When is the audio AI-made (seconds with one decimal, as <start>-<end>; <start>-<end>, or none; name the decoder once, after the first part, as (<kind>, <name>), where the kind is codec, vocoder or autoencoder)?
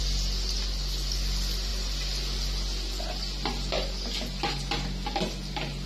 none